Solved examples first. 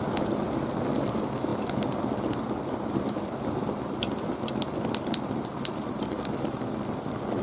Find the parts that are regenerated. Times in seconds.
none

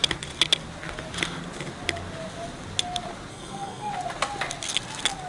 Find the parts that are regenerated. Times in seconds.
3.3-3.9 (codec, SNAC)

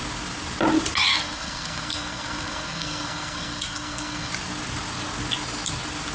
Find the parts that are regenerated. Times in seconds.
1.1-4.3 (codec, SNAC)

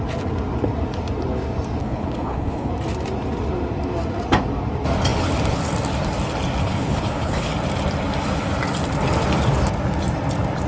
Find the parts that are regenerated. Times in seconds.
1.8-2.7 (codec, HILCodec); 6.6-7.5

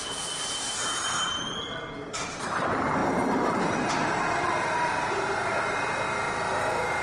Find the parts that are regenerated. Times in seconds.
0.8-1.6 (vocoder, BigVGAN v2)

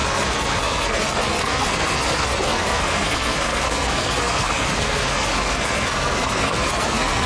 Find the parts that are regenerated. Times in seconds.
0.0-7.3 (codec, SNAC)